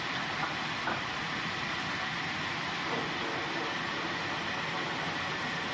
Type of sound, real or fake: real